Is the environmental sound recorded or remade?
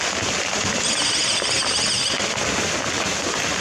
recorded